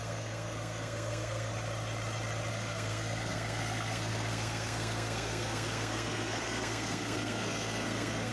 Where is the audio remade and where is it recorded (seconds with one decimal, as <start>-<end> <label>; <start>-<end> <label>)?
0.0-1.5 remade; 1.5-2.5 recorded; 2.5-8.3 remade